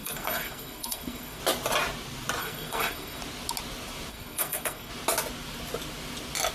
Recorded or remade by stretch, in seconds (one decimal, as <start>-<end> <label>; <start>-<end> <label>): 0.0-1.4 remade; 1.4-2.4 recorded; 2.4-3.2 remade; 3.2-4.1 recorded; 4.1-4.9 remade; 4.9-6.5 recorded